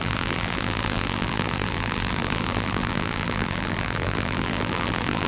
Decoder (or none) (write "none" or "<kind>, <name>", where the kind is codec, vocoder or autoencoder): vocoder, BigVGAN v2